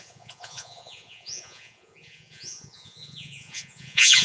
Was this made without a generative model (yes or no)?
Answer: no